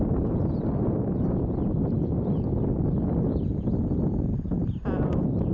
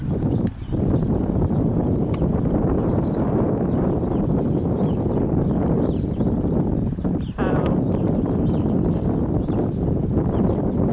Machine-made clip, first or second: second